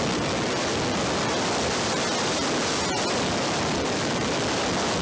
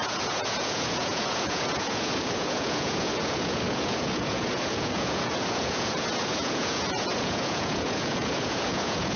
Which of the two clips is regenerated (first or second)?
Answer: second